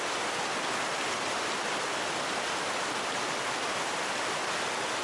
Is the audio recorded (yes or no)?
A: yes